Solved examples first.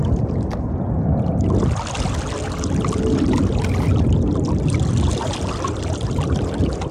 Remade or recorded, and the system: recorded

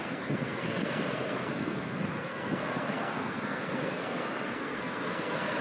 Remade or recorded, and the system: remade, codec, SNAC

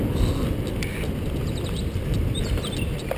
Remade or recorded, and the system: recorded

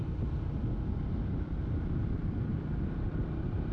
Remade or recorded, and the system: recorded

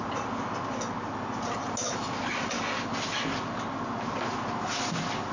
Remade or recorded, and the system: recorded